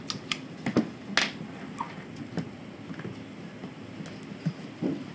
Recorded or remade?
recorded